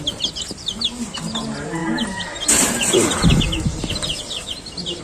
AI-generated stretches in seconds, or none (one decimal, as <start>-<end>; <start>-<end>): none

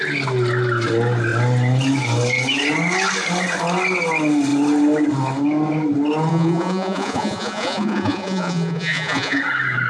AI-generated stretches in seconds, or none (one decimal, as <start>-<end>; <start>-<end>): 6.3-9.4

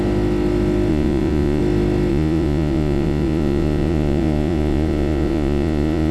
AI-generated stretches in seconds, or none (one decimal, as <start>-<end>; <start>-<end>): 0.9-1.6; 2.1-6.1